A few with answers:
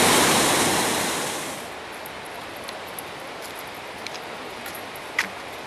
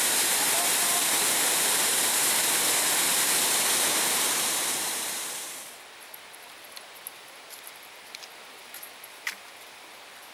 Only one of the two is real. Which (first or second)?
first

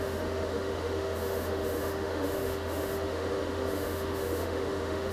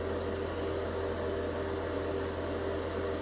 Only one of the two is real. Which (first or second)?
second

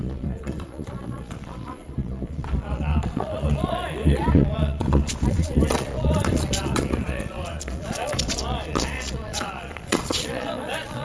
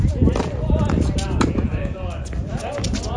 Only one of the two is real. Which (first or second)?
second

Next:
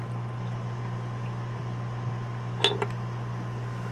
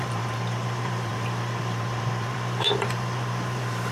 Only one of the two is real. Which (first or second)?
first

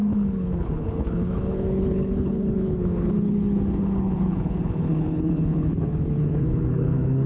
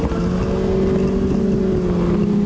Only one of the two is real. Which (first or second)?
second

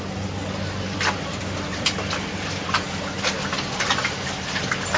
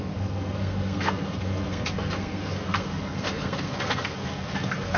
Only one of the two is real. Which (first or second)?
first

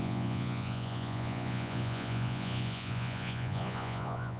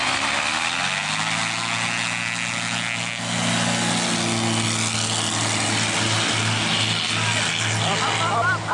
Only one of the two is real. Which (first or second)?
second